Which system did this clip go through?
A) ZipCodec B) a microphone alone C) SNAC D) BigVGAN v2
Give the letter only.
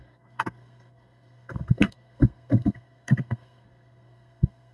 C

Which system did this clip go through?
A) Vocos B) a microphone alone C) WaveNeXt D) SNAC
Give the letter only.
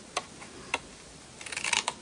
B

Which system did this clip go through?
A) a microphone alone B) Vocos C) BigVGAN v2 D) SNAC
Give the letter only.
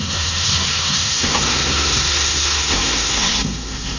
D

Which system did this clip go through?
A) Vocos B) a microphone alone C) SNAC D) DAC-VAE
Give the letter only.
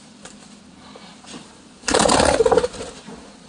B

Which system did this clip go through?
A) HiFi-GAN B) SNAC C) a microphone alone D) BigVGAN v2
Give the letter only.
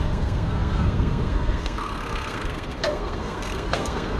B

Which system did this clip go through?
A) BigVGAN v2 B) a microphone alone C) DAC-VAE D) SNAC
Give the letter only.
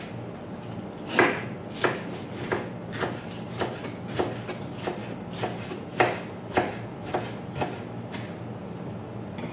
B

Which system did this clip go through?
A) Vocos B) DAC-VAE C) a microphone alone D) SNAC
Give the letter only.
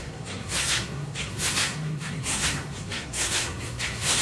D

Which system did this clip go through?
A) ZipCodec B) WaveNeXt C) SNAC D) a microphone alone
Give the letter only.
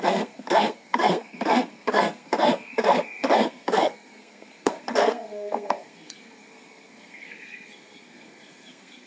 C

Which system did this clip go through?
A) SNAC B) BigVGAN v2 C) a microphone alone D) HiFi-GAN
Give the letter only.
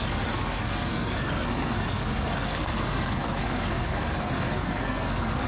A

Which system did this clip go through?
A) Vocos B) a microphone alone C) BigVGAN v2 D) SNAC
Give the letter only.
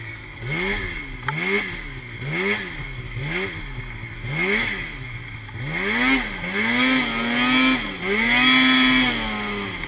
B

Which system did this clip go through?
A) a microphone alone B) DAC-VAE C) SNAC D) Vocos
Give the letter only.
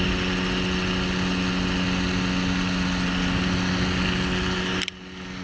A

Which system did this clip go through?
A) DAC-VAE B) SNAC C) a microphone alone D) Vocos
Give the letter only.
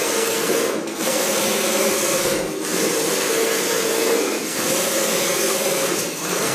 B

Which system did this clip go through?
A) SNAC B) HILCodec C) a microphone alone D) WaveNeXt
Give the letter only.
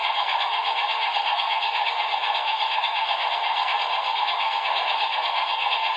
A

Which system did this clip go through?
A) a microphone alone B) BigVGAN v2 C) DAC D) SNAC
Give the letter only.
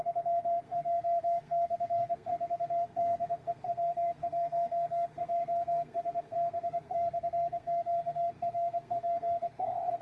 D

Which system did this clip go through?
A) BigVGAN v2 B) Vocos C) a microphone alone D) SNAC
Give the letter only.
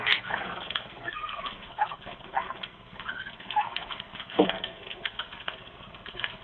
D